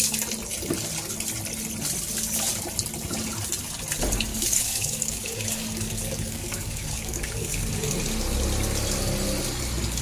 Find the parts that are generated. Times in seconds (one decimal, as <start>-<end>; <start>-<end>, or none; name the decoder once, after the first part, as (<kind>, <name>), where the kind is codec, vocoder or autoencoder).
4.3-7.7 (codec, DAC)